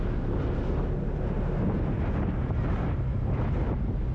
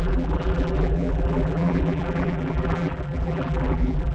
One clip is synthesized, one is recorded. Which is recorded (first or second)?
first